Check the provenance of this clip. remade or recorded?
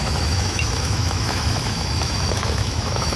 remade